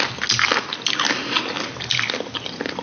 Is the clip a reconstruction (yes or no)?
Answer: no